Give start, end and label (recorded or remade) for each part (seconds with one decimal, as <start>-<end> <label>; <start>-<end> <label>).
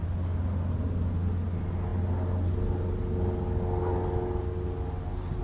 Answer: 0.0-5.4 recorded